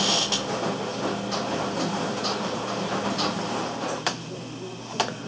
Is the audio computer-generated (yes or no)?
no